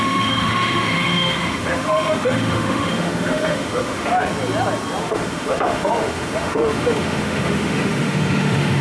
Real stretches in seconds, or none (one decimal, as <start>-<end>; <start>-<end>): 4.1-5.0